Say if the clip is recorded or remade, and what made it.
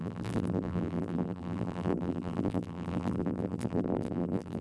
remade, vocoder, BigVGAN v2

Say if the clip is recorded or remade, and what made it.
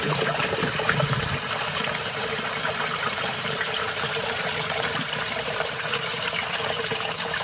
remade, vocoder, BigVGAN v2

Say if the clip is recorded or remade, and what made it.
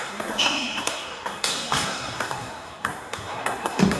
remade, codec, SNAC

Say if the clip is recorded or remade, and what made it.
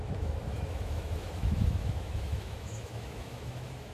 remade, autoencoder, DAC-VAE